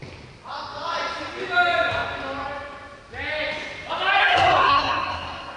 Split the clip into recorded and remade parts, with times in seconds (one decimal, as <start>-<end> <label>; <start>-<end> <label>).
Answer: 0.0-4.2 recorded; 4.2-5.6 remade